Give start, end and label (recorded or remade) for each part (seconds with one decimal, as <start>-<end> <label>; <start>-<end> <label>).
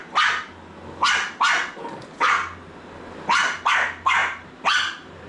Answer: 0.0-4.2 recorded; 4.2-5.3 remade